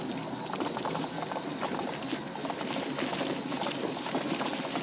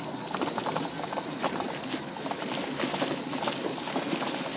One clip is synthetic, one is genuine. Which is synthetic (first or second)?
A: second